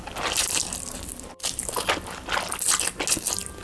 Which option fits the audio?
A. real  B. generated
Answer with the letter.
A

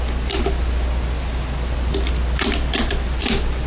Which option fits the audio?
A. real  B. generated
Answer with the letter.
A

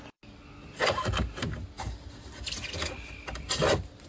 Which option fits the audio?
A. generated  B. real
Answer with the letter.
B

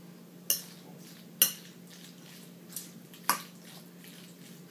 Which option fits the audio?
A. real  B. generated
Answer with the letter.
A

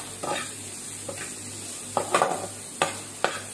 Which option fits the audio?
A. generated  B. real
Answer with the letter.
B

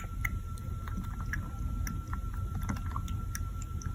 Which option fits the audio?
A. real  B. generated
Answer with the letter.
A